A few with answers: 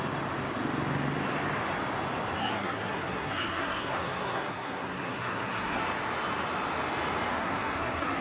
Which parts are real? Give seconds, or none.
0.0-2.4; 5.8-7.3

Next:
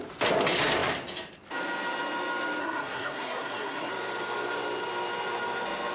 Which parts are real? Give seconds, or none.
0.0-2.6; 3.9-5.9

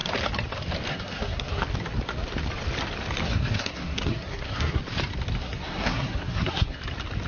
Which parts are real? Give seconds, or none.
0.0-0.9; 1.6-3.2; 4.8-5.4; 6.8-7.3

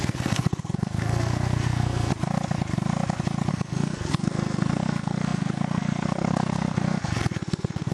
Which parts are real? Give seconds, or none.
2.1-3.5

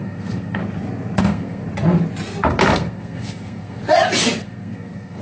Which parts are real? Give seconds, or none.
0.6-1.2; 1.6-2.7; 3.8-4.4

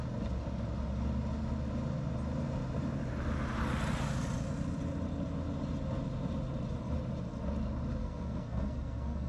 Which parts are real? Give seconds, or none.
0.0-8.0